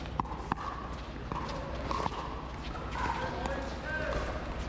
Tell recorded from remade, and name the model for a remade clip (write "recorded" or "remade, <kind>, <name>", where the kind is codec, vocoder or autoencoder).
recorded